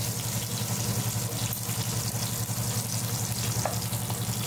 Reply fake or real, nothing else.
real